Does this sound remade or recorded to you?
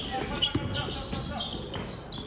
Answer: recorded